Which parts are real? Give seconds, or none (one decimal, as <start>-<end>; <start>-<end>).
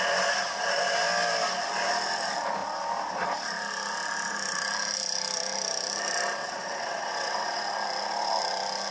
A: 0.0-6.4; 7.6-8.9